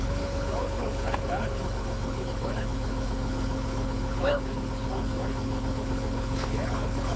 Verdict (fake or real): fake